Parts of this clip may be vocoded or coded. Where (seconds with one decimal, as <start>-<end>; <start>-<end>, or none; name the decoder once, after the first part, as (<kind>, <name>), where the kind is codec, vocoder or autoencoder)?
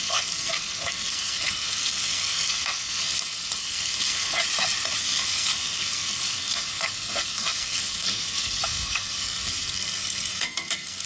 0.0-4.4 (codec, SNAC); 5.0-11.1